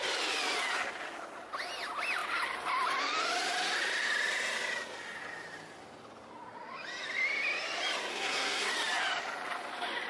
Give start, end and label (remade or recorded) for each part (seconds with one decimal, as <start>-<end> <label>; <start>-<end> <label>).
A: 0.0-8.1 recorded; 8.1-8.7 remade; 8.7-10.1 recorded